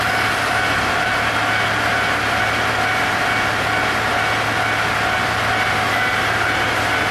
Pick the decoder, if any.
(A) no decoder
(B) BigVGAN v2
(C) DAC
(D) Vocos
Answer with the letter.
A